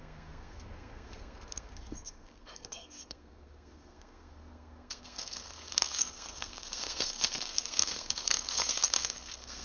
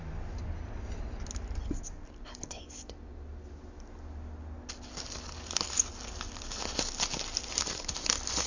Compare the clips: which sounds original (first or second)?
second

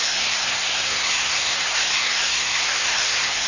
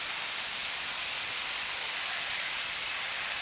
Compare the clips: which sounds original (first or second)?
second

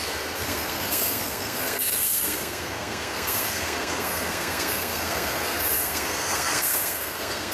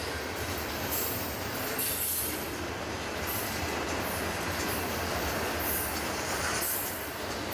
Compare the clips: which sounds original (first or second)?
second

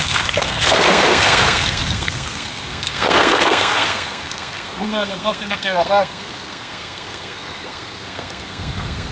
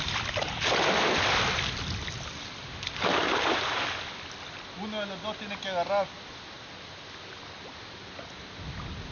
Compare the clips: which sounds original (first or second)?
second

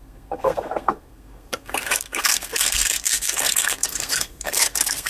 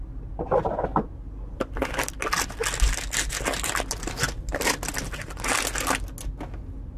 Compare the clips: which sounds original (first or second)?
second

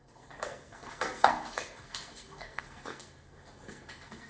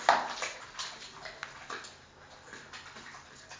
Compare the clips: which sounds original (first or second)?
second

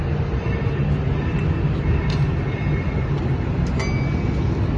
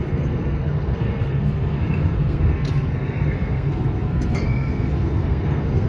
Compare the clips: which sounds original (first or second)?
first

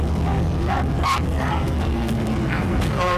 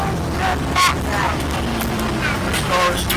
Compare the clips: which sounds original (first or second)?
second